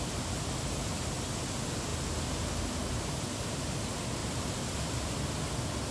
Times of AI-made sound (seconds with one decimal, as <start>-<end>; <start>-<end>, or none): 4.2-4.9